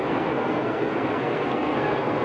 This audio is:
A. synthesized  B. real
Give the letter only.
A